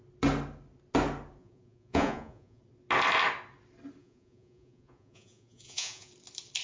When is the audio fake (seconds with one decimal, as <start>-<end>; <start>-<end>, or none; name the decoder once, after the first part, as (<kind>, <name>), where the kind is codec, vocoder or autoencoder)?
1.4-2.6 (vocoder, Vocos); 4.0-6.1